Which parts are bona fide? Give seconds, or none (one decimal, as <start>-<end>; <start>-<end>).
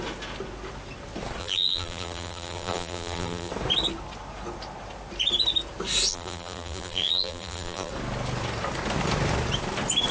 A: 0.0-1.4; 3.5-6.1; 7.9-10.1